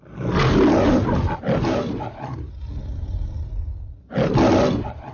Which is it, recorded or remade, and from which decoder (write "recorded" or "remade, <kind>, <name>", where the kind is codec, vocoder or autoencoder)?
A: recorded